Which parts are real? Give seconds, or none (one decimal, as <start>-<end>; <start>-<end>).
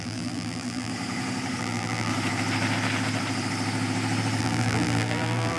0.9-1.6; 2.1-4.4